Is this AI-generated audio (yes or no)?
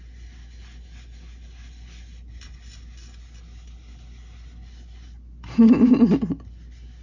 no